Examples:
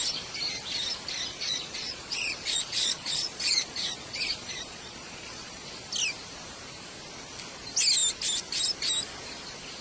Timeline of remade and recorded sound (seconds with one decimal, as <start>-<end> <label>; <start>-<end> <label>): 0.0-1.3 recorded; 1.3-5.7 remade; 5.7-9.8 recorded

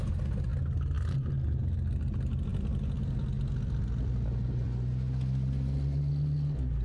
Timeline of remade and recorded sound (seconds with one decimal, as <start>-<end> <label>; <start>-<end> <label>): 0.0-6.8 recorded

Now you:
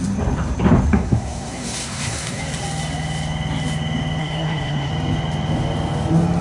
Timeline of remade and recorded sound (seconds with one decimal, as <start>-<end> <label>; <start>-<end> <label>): 0.0-0.9 recorded; 0.9-2.4 remade; 2.4-4.2 recorded; 4.2-4.9 remade; 4.9-6.4 recorded

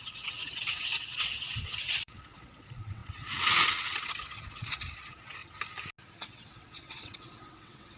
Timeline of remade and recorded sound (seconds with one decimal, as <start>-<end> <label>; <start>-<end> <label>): 0.0-5.4 remade; 5.4-6.2 recorded; 6.2-8.0 remade